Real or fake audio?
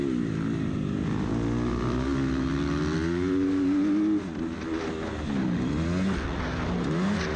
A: real